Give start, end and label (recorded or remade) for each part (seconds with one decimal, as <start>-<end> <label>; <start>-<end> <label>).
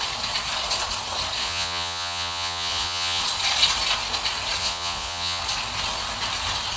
0.0-1.4 recorded; 1.4-3.2 remade; 3.2-4.6 recorded; 4.6-5.4 remade; 5.4-6.8 recorded